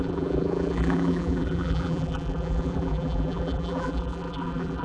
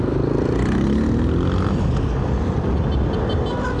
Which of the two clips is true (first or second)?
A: second